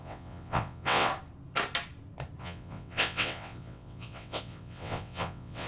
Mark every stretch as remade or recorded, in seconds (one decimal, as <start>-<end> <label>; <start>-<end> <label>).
0.0-1.1 remade; 1.1-2.4 recorded; 2.4-5.7 remade